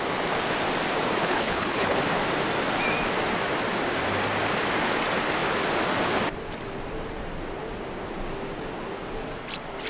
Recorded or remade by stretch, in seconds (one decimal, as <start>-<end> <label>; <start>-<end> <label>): 0.0-1.2 recorded; 1.2-2.0 remade; 2.0-9.9 recorded